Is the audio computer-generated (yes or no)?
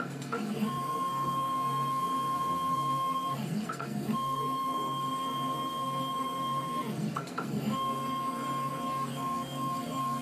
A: yes